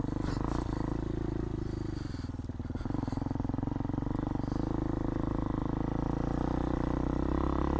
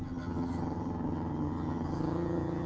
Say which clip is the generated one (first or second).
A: second